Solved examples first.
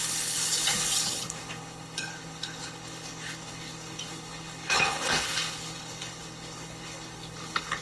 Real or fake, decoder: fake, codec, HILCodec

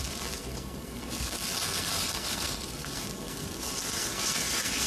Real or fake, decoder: fake, codec, SNAC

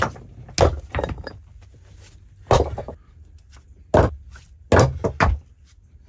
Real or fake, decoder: real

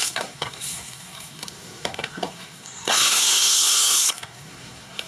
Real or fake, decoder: fake, codec, SNAC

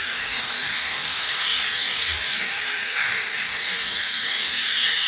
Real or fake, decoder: fake, codec, DAC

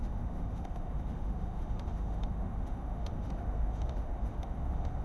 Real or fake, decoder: fake, autoencoder, DAC-VAE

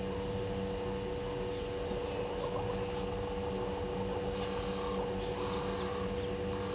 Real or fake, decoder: real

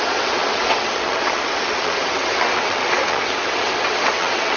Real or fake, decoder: fake, vocoder, WaveNeXt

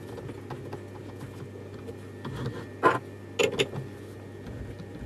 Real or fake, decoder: real